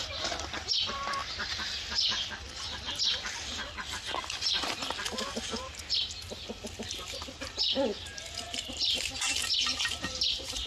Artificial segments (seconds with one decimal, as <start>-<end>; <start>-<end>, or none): 1.2-2.2; 8.1-9.1